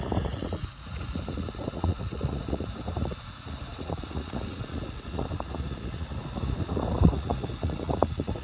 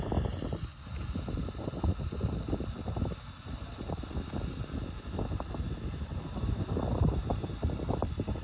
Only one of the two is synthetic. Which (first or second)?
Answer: first